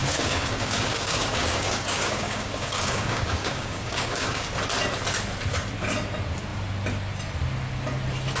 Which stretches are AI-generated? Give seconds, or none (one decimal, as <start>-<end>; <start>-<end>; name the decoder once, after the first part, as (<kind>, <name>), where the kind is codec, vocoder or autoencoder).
0.0-4.5 (codec, DAC)